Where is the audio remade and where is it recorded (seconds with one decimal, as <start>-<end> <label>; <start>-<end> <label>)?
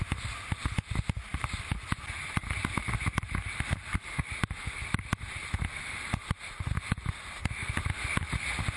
0.0-8.8 recorded